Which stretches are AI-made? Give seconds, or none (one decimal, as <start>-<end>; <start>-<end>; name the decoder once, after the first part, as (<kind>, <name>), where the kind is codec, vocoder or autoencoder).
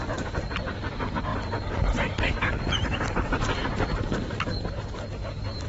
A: none